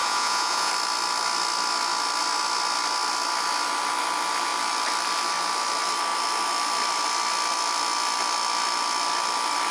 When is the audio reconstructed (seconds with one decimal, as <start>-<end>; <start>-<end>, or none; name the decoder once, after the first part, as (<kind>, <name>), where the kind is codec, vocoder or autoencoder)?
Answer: 0.0-0.7 (vocoder, Vocos)